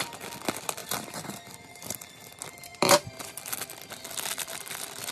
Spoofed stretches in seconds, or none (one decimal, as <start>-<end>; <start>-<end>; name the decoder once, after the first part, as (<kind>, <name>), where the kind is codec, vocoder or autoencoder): 0.8-2.2 (vocoder, BigVGAN v2); 2.7-4.6